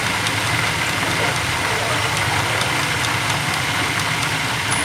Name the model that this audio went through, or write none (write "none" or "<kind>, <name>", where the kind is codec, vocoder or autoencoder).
none